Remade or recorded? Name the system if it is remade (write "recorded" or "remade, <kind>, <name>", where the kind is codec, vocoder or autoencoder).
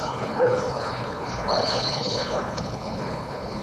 remade, codec, HILCodec